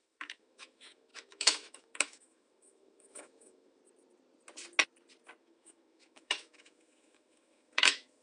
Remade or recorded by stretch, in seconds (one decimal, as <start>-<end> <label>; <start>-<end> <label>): 0.0-3.8 remade; 3.8-5.4 recorded; 5.4-8.2 remade